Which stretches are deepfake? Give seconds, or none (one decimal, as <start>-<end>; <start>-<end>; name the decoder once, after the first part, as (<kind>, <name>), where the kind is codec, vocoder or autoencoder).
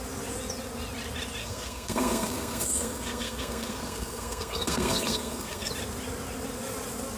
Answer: 1.4-5.7 (codec, SNAC)